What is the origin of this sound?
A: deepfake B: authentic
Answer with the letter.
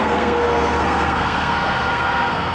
A